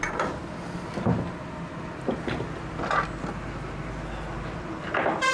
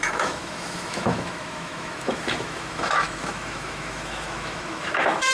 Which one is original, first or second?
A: first